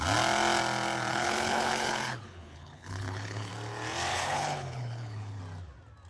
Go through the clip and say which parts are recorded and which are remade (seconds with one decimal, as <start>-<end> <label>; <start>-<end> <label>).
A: 0.0-1.1 recorded; 1.1-3.5 remade; 3.5-4.1 recorded; 4.1-5.4 remade; 5.4-6.1 recorded